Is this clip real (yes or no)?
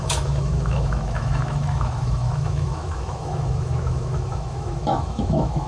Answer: no